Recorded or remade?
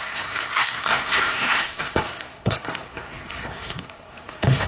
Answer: remade